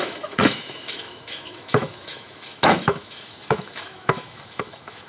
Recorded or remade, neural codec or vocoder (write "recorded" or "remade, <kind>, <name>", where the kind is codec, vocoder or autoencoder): remade, autoencoder, DAC-VAE